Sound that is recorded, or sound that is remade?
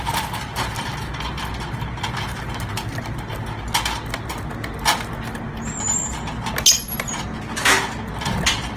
recorded